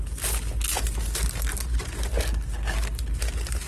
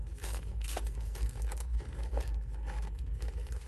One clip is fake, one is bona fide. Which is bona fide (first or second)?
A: first